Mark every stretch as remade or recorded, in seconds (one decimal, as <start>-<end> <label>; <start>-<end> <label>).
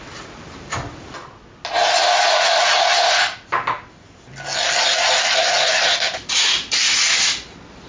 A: 0.0-7.9 recorded